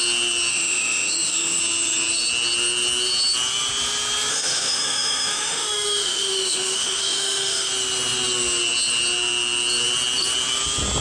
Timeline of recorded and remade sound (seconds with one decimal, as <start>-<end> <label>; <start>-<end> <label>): 0.0-0.5 recorded; 0.5-1.6 remade; 1.6-4.3 recorded; 4.3-7.7 remade; 7.7-11.0 recorded